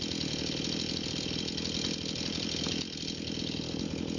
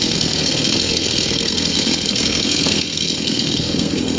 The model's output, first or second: second